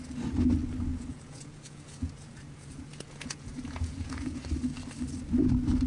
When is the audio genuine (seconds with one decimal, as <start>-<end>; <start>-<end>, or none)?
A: 0.0-0.9; 4.4-5.9